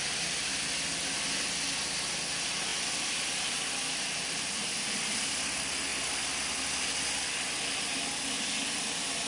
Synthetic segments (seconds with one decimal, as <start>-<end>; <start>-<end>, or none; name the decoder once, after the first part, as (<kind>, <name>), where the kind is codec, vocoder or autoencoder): none

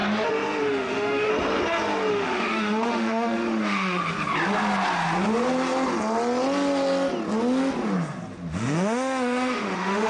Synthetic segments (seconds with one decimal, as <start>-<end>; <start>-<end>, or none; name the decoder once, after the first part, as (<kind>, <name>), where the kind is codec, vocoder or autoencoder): 0.6-1.3 (autoencoder, DAC-VAE); 2.1-4.0; 8.5-10.1

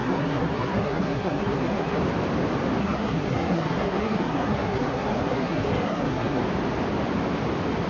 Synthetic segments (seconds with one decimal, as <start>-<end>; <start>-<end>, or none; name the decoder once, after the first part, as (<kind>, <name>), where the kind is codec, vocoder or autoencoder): 0.0-2.0 (codec, SNAC); 2.8-6.4

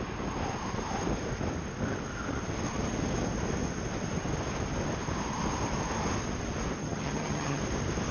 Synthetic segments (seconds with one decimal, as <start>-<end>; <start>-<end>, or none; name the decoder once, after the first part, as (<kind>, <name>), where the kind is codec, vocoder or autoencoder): 6.8-7.6 (vocoder, HiFi-GAN)

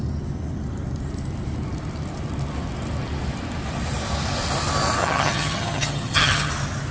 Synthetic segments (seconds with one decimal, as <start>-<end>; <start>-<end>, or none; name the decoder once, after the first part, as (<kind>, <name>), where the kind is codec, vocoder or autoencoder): 5.0-6.5 (vocoder, HiFi-GAN)

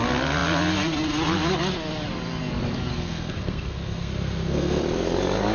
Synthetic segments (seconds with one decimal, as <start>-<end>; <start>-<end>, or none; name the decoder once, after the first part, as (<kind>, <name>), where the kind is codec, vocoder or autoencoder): 2.9-4.8 (codec, SNAC)